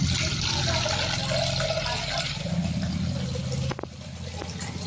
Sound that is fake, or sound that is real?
real